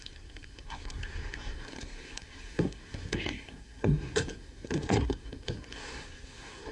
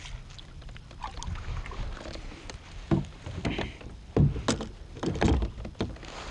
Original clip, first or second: second